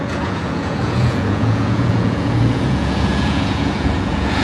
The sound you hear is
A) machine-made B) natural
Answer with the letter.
A